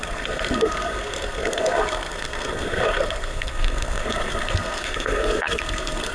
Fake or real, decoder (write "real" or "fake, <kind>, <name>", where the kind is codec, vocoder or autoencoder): fake, codec, SNAC